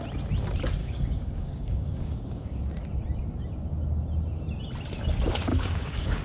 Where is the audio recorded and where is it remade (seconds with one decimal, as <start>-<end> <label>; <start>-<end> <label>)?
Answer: 0.0-0.8 recorded; 0.8-2.6 remade; 2.6-5.5 recorded; 5.5-6.2 remade